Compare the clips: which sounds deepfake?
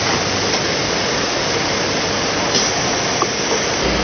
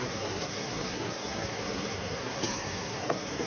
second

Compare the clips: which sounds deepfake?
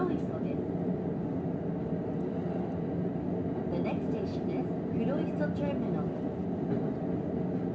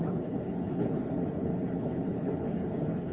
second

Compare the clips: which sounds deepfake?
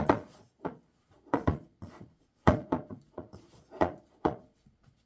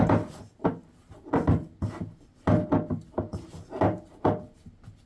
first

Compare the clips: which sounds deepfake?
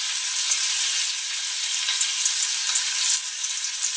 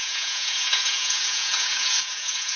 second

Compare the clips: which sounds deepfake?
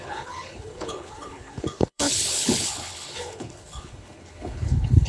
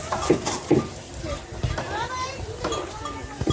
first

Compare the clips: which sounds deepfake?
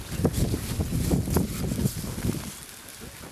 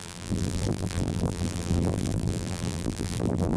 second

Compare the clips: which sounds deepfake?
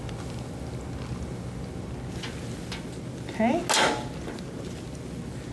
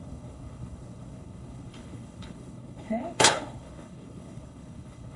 second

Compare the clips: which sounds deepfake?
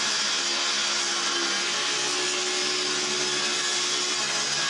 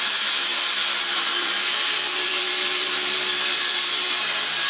second